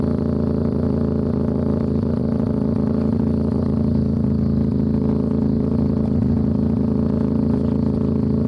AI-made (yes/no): no